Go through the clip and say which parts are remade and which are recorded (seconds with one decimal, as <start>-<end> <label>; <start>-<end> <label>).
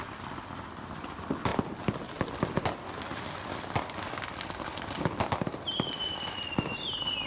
0.0-7.3 recorded